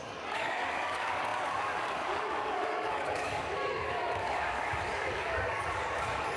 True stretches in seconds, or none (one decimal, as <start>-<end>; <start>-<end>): none